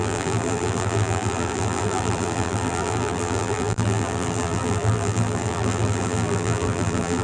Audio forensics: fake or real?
fake